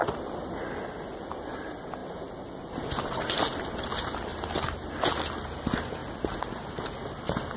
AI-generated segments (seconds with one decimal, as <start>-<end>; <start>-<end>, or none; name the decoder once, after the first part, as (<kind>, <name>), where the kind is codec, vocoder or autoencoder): 2.0-3.2 (vocoder, BigVGAN v2); 4.3-4.9

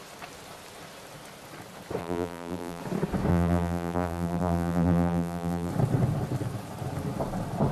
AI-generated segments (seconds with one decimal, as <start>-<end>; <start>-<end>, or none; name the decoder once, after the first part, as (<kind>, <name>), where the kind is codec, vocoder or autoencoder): 2.0-2.8 (vocoder, BigVGAN v2); 3.3-5.7

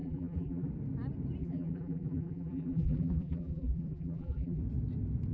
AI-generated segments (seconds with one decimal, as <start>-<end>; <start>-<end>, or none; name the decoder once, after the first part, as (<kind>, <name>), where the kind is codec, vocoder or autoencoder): 0.0-0.7 (vocoder, BigVGAN v2); 1.4-4.6

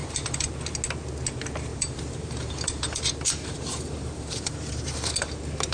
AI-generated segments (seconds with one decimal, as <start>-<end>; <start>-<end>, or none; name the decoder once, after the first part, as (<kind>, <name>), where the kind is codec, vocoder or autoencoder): 0.0-0.5 (vocoder, BigVGAN v2); 1.7-5.1